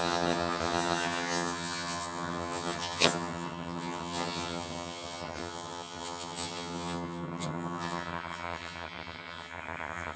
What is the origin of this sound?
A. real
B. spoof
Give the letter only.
B